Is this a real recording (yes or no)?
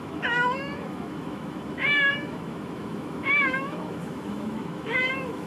no